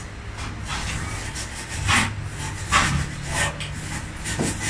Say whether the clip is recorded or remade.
recorded